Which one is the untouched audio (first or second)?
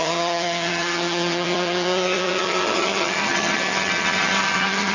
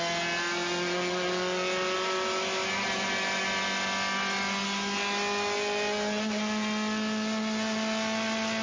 second